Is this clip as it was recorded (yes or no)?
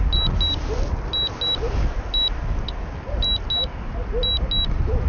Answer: yes